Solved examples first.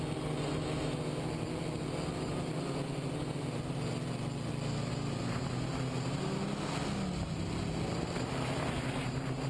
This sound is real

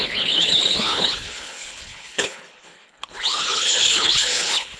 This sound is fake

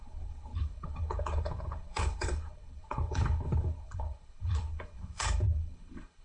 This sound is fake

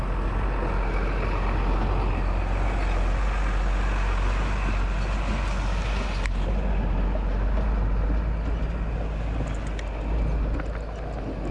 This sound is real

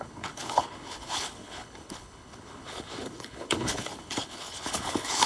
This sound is fake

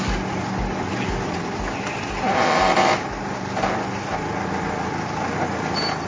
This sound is real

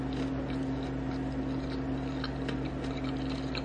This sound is real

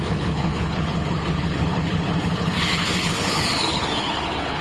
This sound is fake